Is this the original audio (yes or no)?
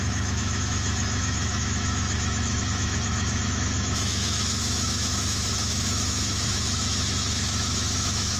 no